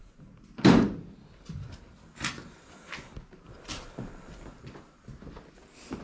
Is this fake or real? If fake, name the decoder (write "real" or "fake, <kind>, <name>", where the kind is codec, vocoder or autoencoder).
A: real